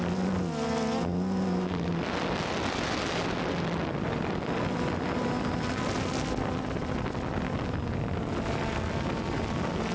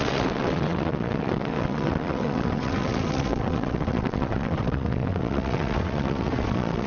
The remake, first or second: second